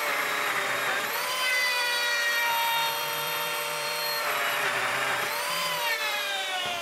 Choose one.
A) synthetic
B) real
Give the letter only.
A